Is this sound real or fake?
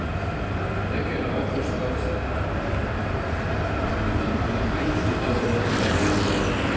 real